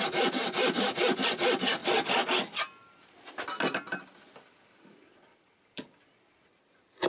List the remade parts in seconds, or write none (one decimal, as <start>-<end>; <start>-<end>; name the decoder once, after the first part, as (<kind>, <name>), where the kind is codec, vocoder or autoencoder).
none